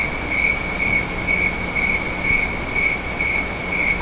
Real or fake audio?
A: real